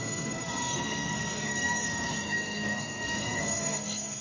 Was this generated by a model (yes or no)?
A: yes